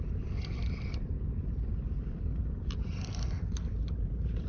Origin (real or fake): real